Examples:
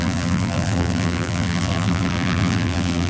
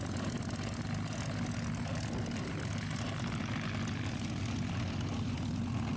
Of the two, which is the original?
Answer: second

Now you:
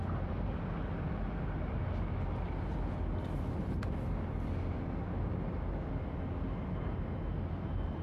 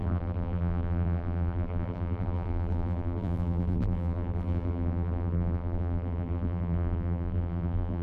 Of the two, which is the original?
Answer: first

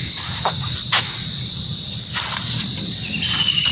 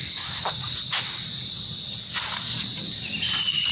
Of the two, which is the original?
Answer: second